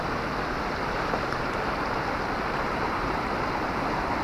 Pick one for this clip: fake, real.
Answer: real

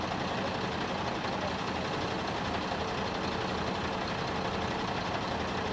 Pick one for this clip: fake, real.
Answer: real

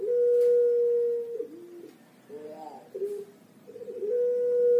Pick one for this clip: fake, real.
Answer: real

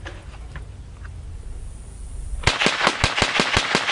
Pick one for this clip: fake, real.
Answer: real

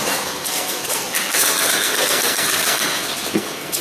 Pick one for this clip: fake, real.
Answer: fake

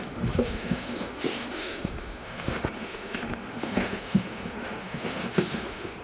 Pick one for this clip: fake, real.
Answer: fake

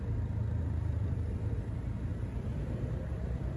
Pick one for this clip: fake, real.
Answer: real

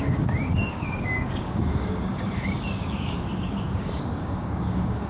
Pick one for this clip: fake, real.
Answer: fake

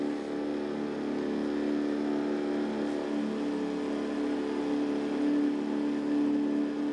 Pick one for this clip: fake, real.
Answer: real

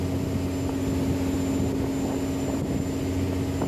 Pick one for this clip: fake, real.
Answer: real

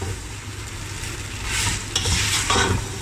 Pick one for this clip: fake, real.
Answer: real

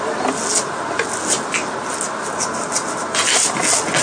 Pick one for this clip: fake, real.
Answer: real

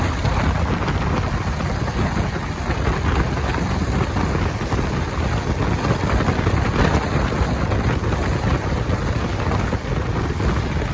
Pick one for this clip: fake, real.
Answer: real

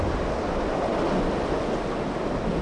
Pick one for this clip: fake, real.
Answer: real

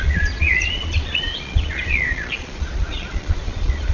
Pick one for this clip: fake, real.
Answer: fake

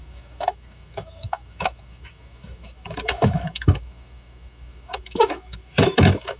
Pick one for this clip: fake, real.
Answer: fake